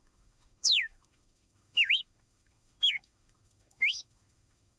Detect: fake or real fake